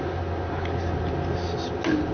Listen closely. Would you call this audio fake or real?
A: real